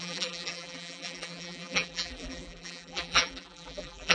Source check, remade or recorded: remade